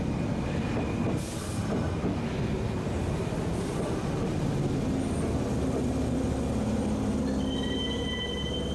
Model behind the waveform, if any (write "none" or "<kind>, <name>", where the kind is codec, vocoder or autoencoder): none